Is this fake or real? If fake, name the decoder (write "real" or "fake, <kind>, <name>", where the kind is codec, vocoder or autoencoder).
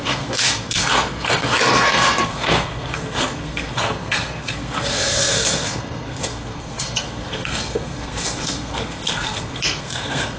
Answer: fake, codec, SNAC